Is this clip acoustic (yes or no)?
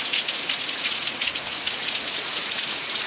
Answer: no